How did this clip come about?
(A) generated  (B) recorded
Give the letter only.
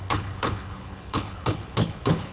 A